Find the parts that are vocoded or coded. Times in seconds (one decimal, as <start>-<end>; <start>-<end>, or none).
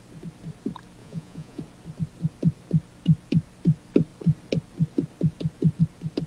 1.0-1.6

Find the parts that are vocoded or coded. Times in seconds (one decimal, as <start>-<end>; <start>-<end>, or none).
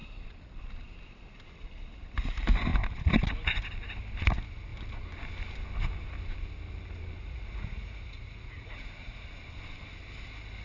7.2-9.4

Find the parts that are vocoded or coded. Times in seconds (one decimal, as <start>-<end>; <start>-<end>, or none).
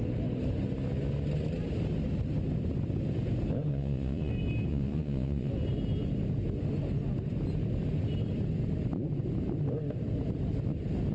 3.7-4.3; 4.7-5.5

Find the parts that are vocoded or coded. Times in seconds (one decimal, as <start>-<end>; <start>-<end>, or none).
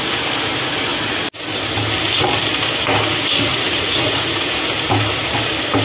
3.5-4.6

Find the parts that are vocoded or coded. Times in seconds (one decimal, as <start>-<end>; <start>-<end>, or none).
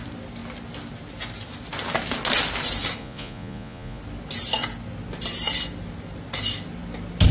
3.0-4.0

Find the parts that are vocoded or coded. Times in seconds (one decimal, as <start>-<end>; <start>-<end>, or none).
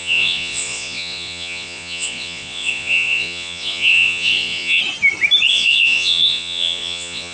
0.0-4.8; 5.5-7.3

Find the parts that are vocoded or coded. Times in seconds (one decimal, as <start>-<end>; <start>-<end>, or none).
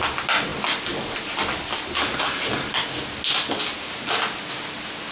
none